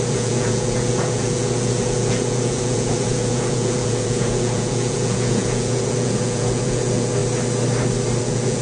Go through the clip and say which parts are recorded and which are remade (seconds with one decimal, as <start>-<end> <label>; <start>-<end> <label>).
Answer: 0.0-7.2 remade; 7.2-8.2 recorded; 8.2-8.6 remade